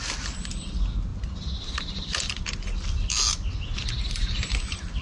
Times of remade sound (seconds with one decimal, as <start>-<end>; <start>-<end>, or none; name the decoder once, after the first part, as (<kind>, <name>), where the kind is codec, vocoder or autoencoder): none

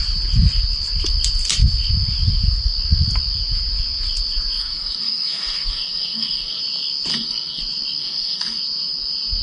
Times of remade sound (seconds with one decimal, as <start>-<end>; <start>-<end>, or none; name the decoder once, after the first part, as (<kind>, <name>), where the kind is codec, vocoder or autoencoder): 4.6-6.6 (codec, SNAC); 7.1-7.6; 8.0-8.6

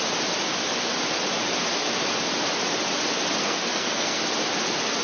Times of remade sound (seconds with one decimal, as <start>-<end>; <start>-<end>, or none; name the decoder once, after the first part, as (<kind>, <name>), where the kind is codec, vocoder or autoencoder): 3.4-4.2 (codec, SNAC)

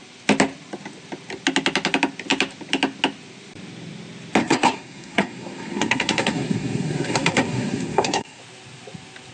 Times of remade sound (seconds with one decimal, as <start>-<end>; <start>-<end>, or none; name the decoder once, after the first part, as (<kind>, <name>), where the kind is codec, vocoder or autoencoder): 4.4-8.4 (codec, SNAC)

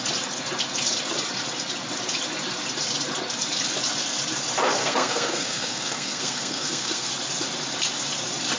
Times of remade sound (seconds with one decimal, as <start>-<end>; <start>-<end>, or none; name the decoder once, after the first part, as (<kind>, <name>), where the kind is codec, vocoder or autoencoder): 4.8-7.1 (codec, SNAC)

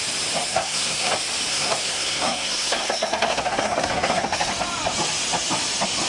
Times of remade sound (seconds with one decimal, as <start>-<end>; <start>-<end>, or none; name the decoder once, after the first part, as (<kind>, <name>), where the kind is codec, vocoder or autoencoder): 0.5-1.1 (codec, SNAC); 1.5-4.5

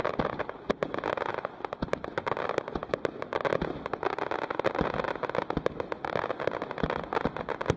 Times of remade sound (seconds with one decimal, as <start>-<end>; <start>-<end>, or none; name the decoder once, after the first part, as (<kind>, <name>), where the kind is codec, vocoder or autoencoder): none